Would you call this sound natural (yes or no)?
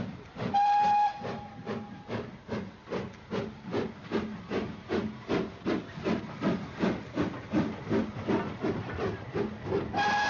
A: yes